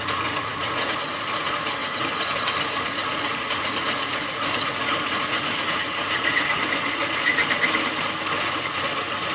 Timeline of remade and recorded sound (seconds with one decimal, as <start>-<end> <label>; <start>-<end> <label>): 0.0-7.4 remade; 7.4-8.4 recorded; 8.4-9.3 remade